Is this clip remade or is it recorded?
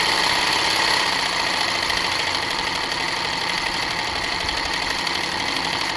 recorded